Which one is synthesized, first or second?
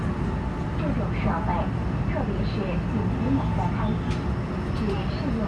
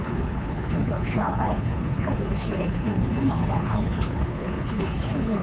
second